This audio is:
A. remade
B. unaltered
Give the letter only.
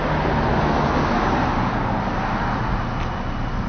B